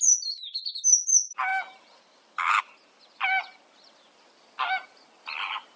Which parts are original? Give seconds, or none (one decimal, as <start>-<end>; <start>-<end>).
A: 0.0-5.8